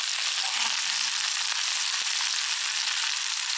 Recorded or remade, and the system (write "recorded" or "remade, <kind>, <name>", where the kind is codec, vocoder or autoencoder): remade, vocoder, BigVGAN v2